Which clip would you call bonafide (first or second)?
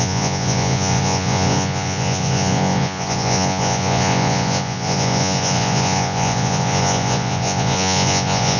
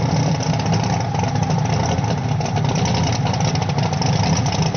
second